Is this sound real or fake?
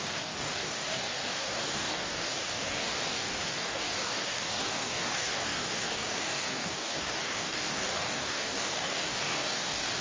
fake